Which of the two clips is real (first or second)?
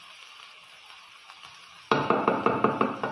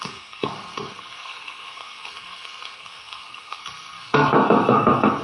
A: first